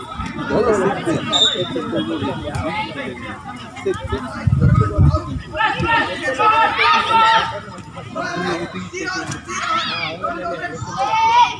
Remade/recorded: recorded